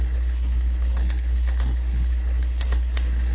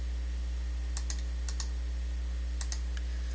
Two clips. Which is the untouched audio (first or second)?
second